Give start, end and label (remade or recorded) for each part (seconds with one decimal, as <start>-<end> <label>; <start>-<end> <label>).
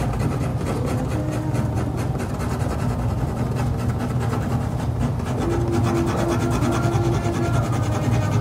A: 0.0-8.4 recorded